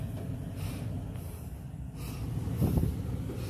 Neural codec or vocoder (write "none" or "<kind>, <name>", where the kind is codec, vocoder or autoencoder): none